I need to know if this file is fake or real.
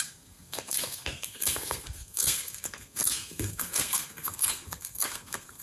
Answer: fake